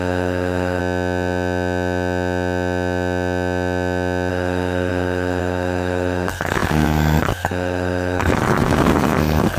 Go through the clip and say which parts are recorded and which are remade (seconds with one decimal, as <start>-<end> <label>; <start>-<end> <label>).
0.0-0.8 remade; 0.8-4.3 recorded; 4.3-9.6 remade